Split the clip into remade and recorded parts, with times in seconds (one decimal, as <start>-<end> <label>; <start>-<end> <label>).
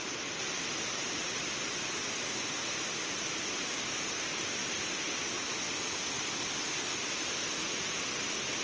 0.0-7.6 recorded; 7.6-8.1 remade; 8.1-8.6 recorded